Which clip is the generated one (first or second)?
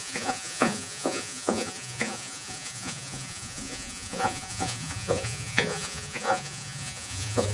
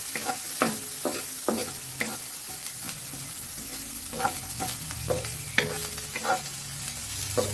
first